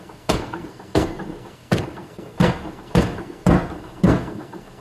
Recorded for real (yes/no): no